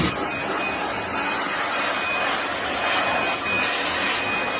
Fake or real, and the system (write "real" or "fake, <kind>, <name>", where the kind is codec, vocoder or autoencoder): real